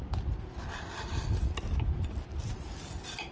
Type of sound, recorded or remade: recorded